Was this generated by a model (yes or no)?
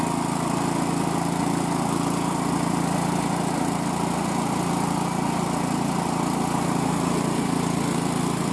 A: no